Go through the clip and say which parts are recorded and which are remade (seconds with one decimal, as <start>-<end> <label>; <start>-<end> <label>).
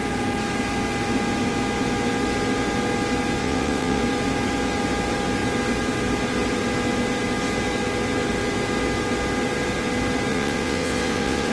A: 0.0-3.4 recorded; 3.4-4.0 remade; 4.0-10.3 recorded; 10.3-11.5 remade